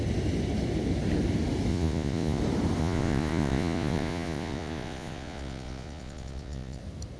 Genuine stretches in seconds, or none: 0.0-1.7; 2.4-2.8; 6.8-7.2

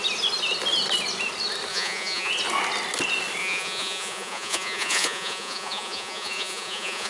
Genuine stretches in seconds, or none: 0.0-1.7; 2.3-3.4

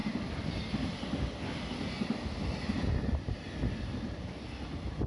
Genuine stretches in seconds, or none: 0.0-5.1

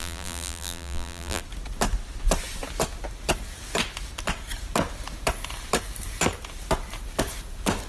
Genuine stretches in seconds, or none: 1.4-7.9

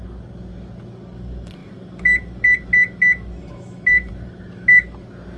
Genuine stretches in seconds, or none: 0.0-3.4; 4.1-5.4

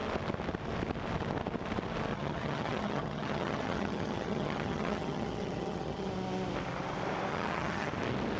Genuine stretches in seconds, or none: 0.0-2.1; 6.1-7.3; 7.9-8.4

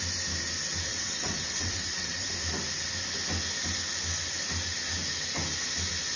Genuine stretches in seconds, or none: 0.0-0.9; 2.3-6.2

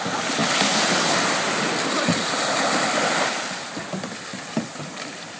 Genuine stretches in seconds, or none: 0.0-5.4